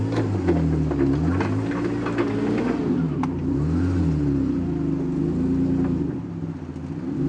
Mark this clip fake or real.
real